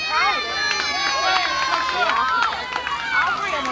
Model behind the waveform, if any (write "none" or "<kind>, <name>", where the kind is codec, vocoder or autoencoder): none